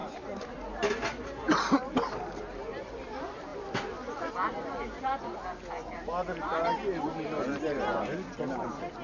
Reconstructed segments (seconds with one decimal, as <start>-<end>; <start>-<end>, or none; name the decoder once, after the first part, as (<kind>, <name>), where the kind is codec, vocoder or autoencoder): none